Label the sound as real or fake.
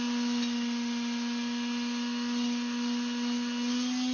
real